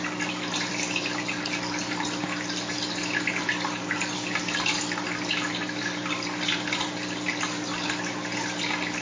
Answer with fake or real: real